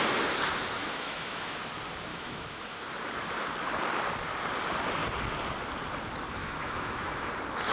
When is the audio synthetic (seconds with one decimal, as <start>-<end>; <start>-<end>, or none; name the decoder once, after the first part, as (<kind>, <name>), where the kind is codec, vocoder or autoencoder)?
0.8-1.6 (autoencoder, DAC-VAE); 2.1-2.8; 6.4-7.3